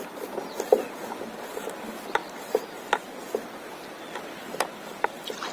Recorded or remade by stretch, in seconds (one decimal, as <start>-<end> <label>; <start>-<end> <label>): 0.0-5.5 recorded